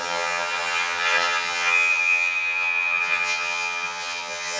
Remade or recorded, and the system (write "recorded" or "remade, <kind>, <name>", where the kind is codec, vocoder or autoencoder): remade, vocoder, HiFi-GAN